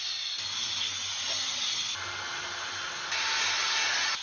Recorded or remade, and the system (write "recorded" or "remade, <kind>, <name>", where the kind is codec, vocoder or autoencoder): recorded